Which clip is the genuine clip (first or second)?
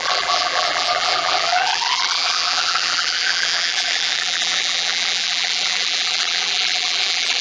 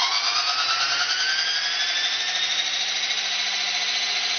second